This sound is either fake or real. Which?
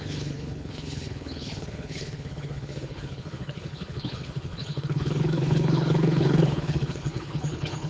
fake